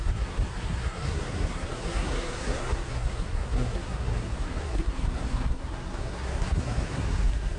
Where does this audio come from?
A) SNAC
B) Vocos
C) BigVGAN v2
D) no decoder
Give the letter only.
A